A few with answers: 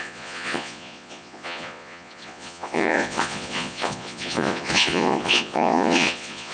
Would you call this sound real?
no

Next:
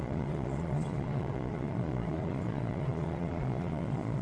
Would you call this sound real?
no